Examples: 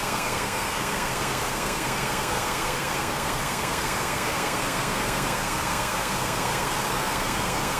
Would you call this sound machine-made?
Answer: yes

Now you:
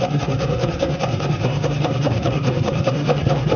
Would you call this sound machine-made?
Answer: yes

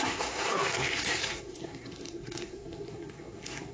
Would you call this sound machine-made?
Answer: yes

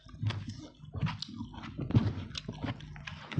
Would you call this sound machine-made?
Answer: no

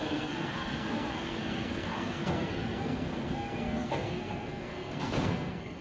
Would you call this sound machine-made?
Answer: yes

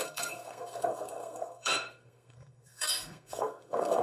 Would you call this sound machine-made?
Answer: yes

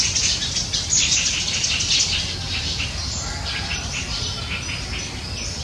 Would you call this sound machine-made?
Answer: no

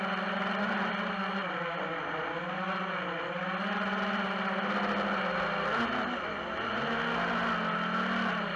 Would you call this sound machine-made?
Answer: no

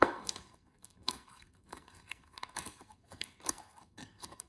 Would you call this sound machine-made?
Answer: yes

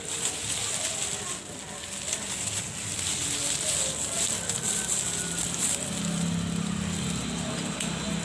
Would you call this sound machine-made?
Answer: no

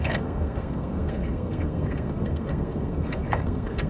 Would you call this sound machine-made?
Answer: yes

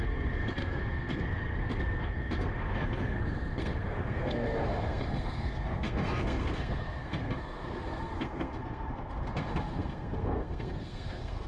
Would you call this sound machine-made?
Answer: yes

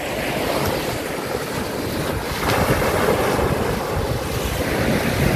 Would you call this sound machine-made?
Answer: no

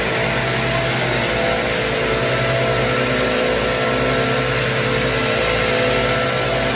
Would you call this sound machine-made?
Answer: no